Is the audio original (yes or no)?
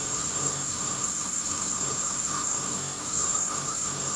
no